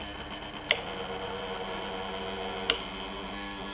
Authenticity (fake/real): real